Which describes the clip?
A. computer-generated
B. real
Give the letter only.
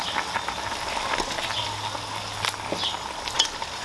B